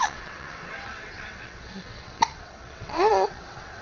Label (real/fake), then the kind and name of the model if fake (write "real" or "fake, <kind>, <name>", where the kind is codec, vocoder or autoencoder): fake, vocoder, WaveNeXt